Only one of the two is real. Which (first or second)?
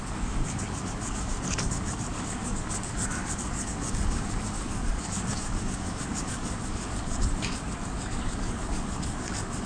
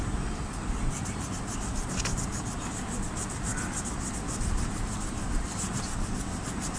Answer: second